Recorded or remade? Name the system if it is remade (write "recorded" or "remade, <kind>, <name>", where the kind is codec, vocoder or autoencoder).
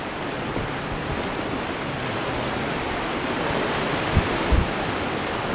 remade, vocoder, BigVGAN v2